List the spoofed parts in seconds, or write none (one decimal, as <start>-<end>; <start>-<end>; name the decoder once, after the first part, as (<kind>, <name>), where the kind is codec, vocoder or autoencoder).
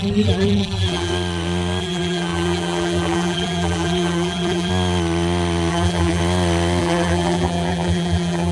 0.0-1.1 (vocoder, BigVGAN v2); 1.8-4.7; 5.7-6.2; 6.8-8.5